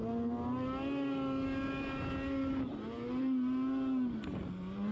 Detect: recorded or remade recorded